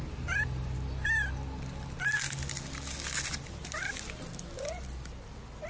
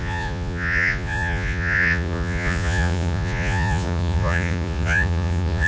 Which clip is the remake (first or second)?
second